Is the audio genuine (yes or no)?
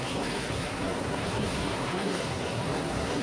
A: no